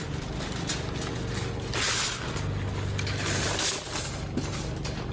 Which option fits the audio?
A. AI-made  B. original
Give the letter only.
B